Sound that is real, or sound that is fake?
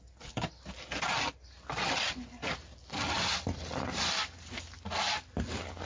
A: real